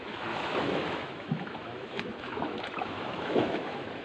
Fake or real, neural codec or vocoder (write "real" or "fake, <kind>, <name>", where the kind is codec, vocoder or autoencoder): fake, autoencoder, DAC-VAE